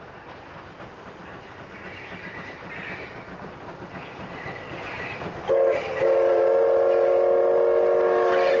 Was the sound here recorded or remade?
recorded